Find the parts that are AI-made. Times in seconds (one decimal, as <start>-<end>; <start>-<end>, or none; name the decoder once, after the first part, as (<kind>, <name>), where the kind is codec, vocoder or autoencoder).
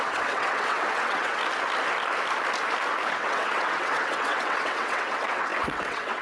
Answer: 0.0-1.4 (vocoder, WaveNeXt); 3.1-6.2